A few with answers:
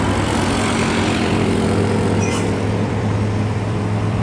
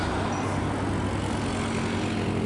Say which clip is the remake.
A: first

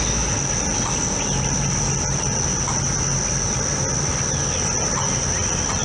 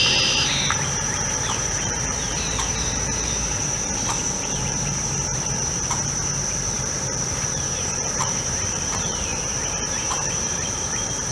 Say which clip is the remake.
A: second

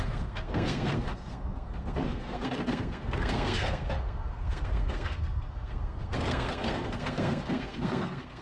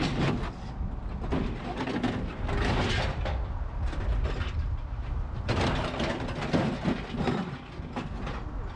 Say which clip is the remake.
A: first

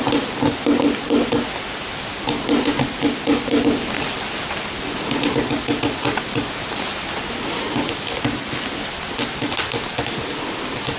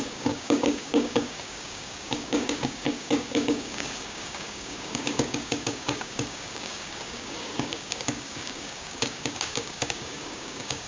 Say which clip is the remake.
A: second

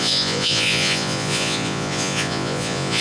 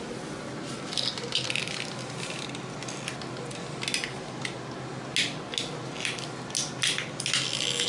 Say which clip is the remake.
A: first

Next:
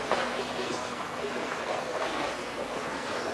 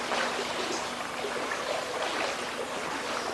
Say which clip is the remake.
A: first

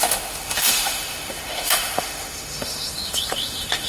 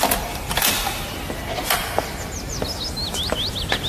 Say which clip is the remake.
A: first